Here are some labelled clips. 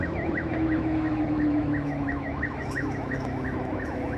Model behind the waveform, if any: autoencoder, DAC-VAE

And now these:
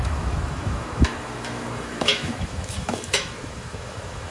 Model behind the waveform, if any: autoencoder, DAC-VAE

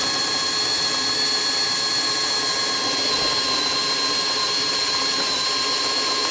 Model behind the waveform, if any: none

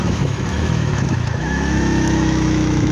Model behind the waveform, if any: autoencoder, DAC-VAE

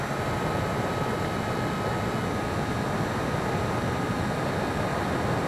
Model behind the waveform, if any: none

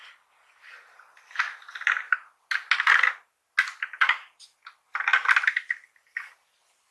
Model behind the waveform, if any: none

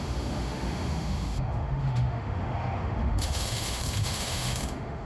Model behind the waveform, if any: autoencoder, DAC-VAE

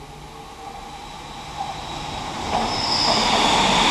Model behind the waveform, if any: none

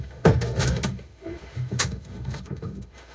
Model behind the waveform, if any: autoencoder, DAC-VAE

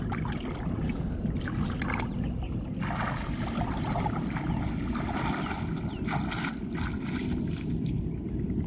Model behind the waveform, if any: none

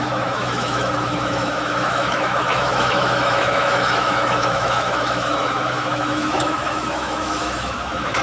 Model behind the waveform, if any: autoencoder, DAC-VAE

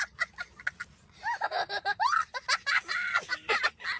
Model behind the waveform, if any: none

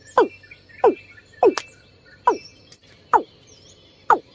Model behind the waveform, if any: none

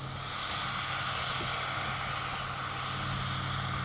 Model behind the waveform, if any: none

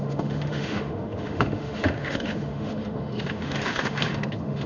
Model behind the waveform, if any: autoencoder, DAC-VAE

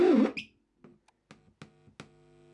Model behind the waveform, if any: none